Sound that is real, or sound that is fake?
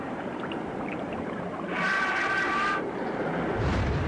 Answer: fake